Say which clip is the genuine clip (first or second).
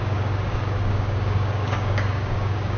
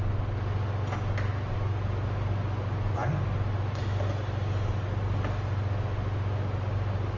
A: second